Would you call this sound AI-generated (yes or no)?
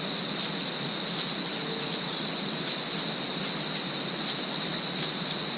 no